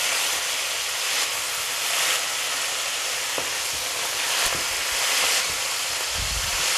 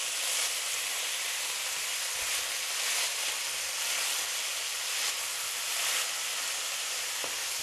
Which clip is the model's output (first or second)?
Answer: second